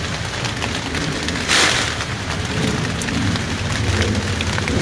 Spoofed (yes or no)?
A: no